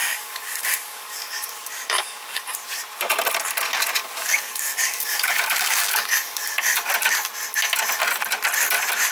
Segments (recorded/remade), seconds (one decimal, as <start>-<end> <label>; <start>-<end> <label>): 0.0-2.5 remade; 2.5-4.0 recorded; 4.0-6.9 remade; 6.9-9.1 recorded